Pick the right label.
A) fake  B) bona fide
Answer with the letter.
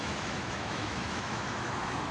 A